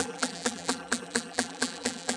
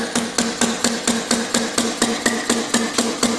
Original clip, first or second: second